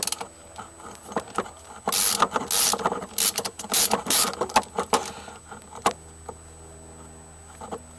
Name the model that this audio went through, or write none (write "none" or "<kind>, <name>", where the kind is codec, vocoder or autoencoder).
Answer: none